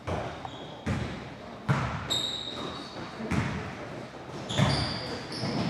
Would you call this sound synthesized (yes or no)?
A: no